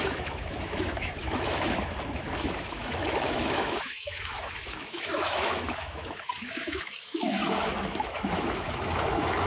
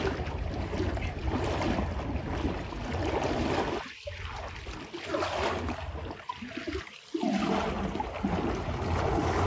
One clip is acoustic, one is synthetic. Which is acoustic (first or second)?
second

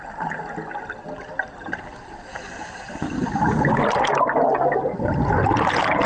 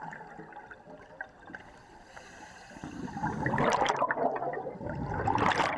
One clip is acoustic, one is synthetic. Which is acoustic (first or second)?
first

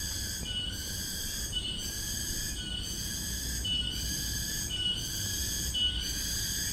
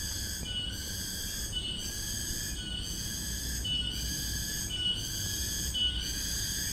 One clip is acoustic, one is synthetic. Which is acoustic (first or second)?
second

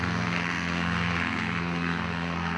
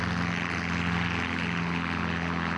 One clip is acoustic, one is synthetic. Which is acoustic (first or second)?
second